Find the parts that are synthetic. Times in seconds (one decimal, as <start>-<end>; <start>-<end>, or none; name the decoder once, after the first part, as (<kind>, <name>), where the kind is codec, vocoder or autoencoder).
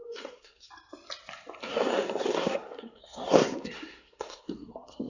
0.0-0.7 (codec, SNAC); 1.6-5.1